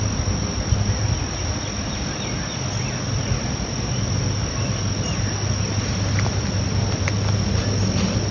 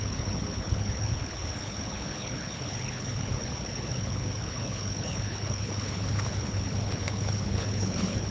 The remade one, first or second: second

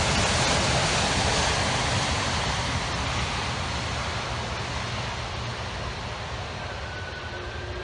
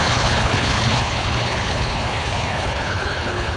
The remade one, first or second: second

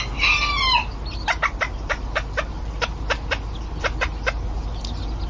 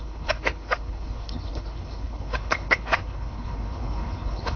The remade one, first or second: second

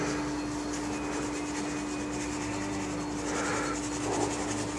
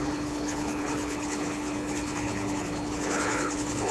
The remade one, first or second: second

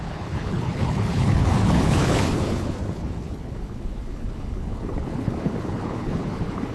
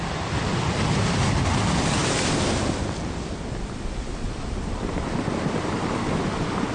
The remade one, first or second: first